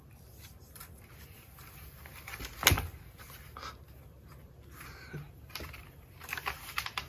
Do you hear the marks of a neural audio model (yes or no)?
no